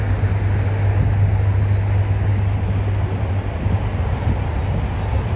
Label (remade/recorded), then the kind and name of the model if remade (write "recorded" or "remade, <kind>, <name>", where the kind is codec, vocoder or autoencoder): recorded